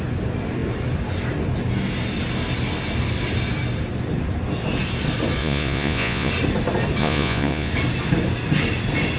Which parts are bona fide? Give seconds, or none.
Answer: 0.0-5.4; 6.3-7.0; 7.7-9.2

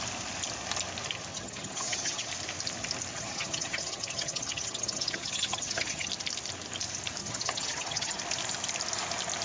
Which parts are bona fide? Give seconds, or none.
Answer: 0.0-1.3; 2.3-3.1; 6.1-7.2; 8.2-9.4

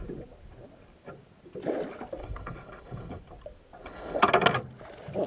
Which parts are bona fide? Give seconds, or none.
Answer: 0.0-2.2; 3.2-3.8; 4.3-5.3

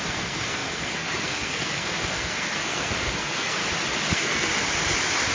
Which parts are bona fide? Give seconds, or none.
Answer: 3.6-4.1; 4.5-5.3

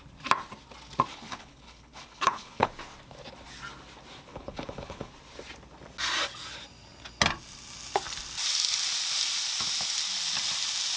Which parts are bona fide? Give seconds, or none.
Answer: 0.0-1.1; 2.7-4.3; 5.1-11.0